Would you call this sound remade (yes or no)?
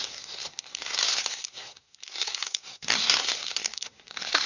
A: yes